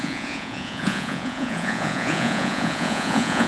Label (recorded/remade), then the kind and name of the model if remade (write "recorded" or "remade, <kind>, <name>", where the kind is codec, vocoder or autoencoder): remade, vocoder, Vocos